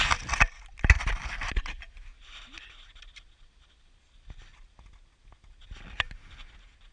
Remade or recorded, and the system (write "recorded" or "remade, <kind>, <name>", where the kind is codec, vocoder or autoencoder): recorded